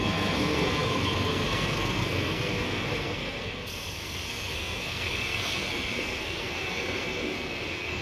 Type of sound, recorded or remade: remade